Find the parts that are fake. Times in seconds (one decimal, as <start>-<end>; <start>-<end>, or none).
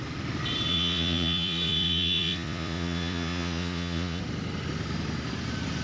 0.7-4.2